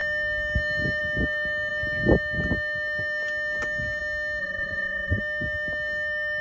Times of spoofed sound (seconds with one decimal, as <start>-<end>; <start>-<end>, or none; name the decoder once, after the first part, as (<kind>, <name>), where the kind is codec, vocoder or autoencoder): 4.4-5.2 (vocoder, Vocos)